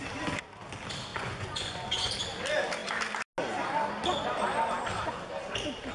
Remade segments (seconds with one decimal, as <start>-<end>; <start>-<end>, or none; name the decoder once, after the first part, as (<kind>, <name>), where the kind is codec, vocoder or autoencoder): 1.1-2.1 (vocoder, Vocos)